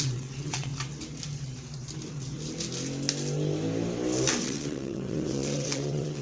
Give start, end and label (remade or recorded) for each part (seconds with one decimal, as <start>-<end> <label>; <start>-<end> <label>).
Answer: 0.0-0.7 remade; 0.7-4.4 recorded; 4.4-6.2 remade